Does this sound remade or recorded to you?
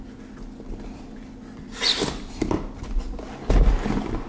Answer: recorded